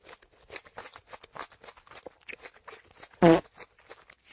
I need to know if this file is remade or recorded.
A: recorded